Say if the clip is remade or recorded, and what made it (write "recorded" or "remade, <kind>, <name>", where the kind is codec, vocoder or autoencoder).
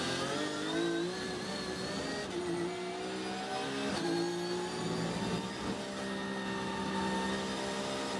recorded